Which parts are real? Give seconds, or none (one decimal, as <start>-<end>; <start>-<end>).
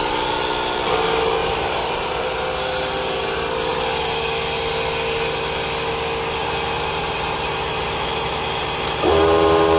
0.0-1.4; 2.2-6.4